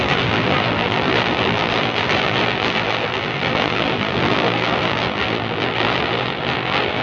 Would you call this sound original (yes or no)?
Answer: no